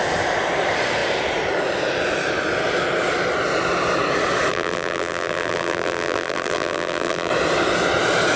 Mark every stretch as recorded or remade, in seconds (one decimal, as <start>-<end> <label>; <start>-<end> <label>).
0.0-4.5 recorded; 4.5-7.3 remade; 7.3-8.4 recorded